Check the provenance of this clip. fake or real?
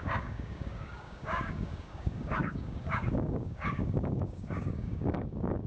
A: fake